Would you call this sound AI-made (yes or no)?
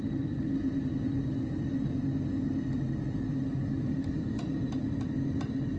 no